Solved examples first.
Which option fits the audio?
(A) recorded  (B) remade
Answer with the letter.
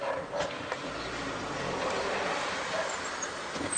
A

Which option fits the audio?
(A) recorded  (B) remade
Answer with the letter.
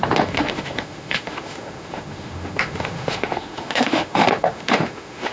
B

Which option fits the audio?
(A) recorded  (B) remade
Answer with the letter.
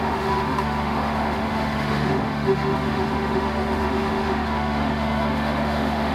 B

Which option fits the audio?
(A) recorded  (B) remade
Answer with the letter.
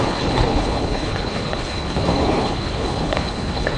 B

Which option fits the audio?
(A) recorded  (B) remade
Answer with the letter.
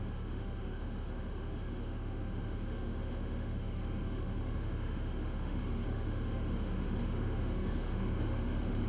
B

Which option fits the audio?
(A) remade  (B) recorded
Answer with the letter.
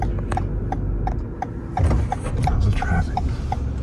B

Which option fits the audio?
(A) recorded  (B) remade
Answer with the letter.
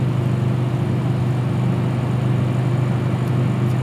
A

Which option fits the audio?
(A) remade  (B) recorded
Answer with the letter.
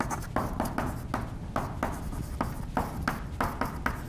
B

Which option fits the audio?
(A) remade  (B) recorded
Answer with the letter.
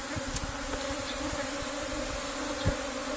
B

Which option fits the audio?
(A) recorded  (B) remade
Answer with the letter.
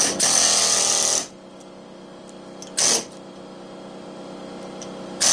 A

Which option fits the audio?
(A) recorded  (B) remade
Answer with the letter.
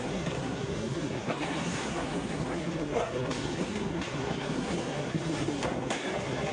B